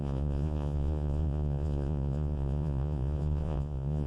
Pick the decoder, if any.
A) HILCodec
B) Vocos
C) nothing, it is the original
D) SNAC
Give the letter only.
B